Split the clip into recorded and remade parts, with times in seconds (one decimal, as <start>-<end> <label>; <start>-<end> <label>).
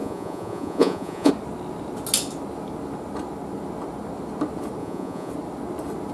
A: 0.0-1.3 remade; 1.3-4.8 recorded; 4.8-5.3 remade; 5.3-6.1 recorded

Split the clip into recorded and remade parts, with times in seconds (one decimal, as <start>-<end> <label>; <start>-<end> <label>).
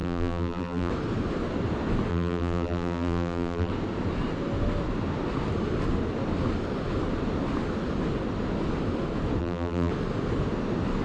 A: 0.0-0.9 remade; 0.9-2.1 recorded; 2.1-3.7 remade; 3.7-9.4 recorded; 9.4-9.9 remade; 9.9-11.0 recorded